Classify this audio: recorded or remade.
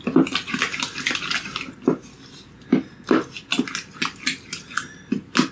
recorded